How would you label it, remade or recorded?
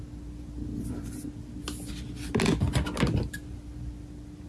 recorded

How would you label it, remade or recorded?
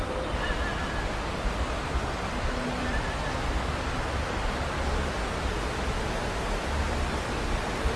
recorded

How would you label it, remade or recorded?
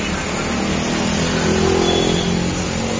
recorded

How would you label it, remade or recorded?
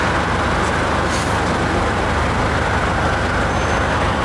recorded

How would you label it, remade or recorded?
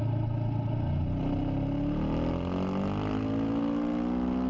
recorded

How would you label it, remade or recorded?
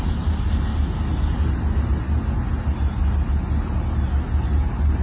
recorded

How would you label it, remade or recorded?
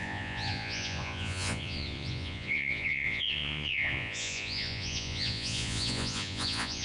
remade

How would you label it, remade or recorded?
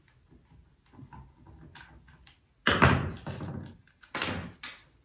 recorded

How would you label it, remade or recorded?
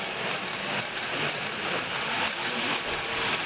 recorded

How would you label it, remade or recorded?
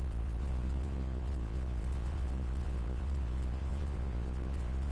remade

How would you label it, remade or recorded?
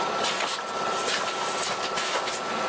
recorded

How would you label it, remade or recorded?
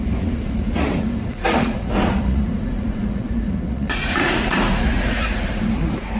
remade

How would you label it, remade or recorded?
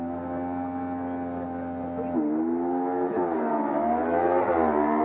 recorded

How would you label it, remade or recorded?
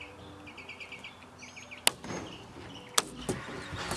recorded